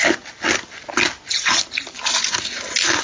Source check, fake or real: real